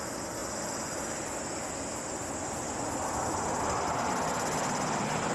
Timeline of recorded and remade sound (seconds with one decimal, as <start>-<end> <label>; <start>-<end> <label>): 0.0-5.3 recorded